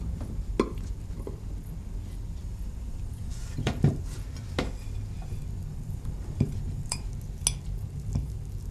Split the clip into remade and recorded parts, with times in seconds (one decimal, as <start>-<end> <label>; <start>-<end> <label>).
0.0-2.4 recorded; 2.4-4.0 remade; 4.0-5.7 recorded; 5.7-7.1 remade; 7.1-8.7 recorded